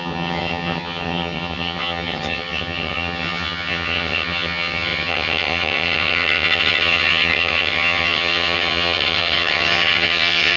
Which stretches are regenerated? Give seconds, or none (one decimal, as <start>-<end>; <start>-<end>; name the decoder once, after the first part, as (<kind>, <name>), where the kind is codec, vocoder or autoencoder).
0.0-10.6 (vocoder, HiFi-GAN)